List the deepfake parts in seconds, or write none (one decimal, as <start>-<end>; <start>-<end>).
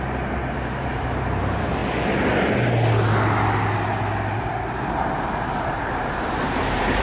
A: 0.0-1.8; 4.9-7.0